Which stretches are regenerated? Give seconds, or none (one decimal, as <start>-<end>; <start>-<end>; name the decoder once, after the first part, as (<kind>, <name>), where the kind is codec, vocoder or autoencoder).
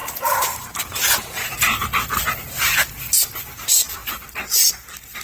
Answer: 0.0-1.8 (vocoder, BigVGAN v2)